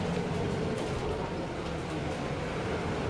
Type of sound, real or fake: fake